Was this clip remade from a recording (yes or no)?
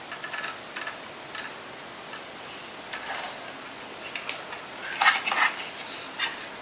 no